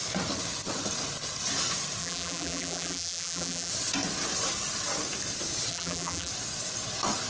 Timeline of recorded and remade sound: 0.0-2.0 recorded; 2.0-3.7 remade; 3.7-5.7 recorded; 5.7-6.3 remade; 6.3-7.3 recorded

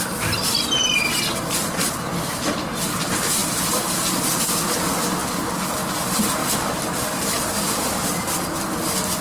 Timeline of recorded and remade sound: 0.0-3.4 recorded; 3.4-4.0 remade; 4.0-6.4 recorded; 6.4-7.5 remade; 7.5-9.2 recorded

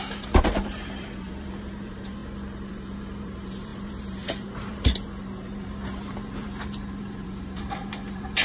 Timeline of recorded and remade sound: 0.0-2.2 remade; 2.2-2.7 recorded; 2.7-8.4 remade